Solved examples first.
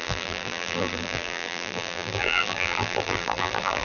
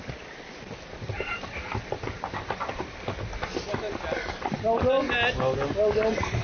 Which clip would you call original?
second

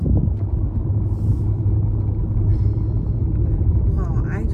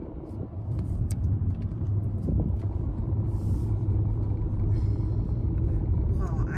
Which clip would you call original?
first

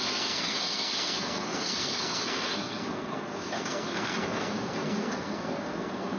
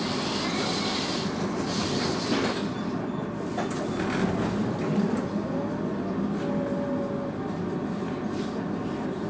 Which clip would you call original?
second